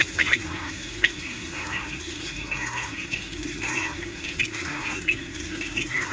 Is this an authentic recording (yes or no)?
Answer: no